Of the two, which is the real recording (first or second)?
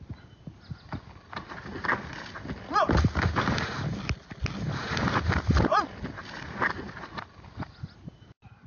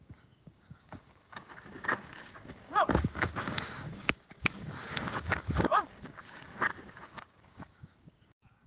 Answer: first